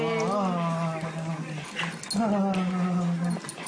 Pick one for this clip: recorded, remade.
recorded